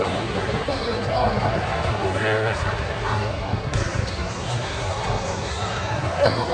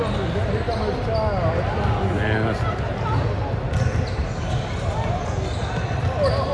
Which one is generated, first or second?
first